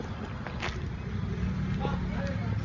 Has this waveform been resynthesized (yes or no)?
no